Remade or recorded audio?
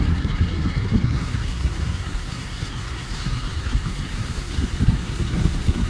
remade